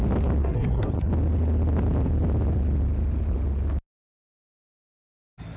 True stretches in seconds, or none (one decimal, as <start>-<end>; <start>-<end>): 0.0-0.4; 1.1-5.6